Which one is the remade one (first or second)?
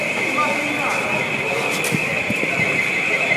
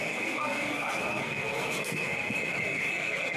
second